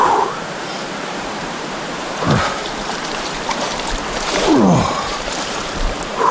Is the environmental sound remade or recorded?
remade